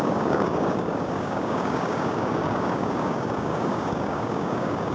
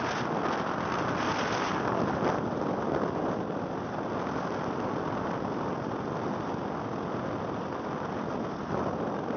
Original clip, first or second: second